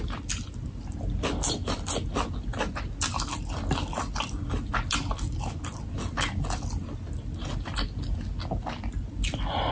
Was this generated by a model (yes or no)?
no